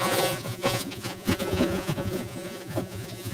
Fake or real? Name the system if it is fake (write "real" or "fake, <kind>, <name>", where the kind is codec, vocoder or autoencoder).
fake, vocoder, Vocos